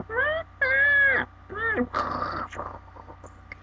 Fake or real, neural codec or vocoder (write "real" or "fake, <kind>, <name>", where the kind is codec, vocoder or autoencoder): real